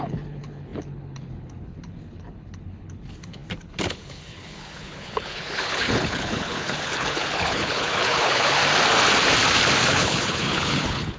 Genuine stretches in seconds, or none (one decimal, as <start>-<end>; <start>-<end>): 8.6-9.9